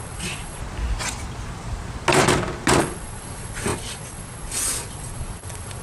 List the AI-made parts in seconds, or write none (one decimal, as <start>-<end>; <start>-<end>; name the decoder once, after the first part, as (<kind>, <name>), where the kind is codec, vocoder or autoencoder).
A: 0.0-0.6 (vocoder, Vocos); 2.8-5.8